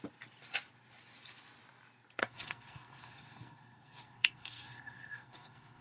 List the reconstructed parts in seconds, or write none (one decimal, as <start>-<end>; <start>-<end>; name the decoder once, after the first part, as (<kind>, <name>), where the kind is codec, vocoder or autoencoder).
2.2-5.8 (codec, SNAC)